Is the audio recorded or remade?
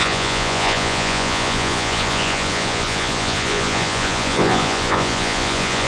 remade